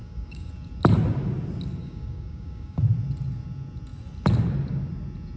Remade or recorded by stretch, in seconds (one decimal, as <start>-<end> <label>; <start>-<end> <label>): 0.0-0.5 remade; 0.5-1.8 recorded; 1.8-2.8 remade; 2.8-5.4 recorded